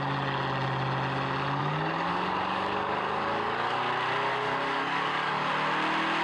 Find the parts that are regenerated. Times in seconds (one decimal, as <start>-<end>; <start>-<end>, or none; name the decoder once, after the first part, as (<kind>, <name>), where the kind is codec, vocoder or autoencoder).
1.6-3.8 (codec, DAC); 4.3-5.5